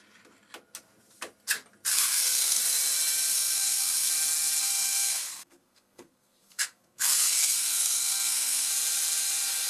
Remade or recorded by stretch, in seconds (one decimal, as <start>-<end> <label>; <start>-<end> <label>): 0.0-1.9 recorded; 1.9-2.6 remade; 2.6-3.3 recorded; 3.3-4.1 remade; 4.1-4.6 recorded; 4.6-8.7 remade; 8.7-9.7 recorded